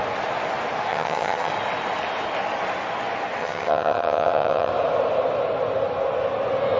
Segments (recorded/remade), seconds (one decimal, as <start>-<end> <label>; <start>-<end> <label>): 0.0-0.9 recorded; 0.9-1.5 remade; 1.5-3.4 recorded; 3.4-4.7 remade; 4.7-6.8 recorded